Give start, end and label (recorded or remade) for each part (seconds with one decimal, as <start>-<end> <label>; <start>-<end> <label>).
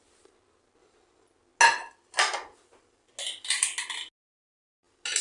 0.0-5.2 recorded